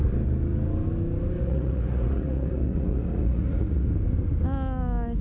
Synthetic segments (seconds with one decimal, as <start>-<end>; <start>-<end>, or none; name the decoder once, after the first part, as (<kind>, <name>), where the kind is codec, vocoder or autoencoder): 1.4-3.9 (vocoder, Vocos)